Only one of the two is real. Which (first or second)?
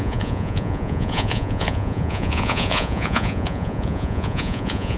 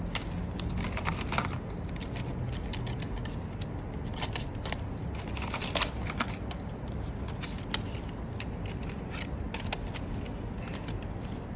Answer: second